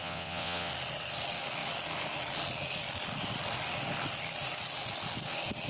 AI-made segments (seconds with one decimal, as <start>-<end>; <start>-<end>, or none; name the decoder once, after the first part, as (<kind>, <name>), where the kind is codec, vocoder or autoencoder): 0.0-0.7 (vocoder, WaveNeXt)